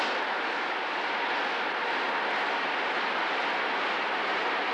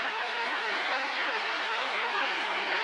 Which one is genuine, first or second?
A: first